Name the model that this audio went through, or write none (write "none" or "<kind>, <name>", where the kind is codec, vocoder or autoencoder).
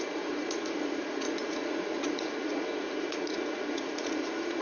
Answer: vocoder, Vocos